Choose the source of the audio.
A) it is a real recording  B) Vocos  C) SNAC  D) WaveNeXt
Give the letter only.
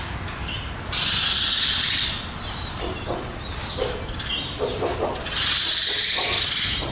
A